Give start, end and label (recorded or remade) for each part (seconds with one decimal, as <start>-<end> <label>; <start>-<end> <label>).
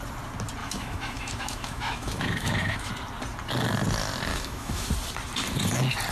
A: 0.0-0.6 recorded; 0.6-2.9 remade; 2.9-4.3 recorded; 4.3-4.9 remade; 4.9-6.1 recorded